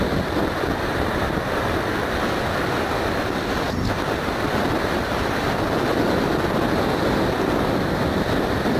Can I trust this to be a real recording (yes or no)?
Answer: yes